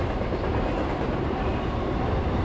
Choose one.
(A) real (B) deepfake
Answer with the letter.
B